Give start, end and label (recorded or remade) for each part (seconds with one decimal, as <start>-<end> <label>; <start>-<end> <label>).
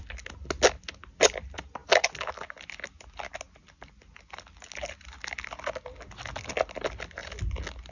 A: 0.0-7.9 recorded